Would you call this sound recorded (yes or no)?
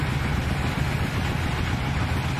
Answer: yes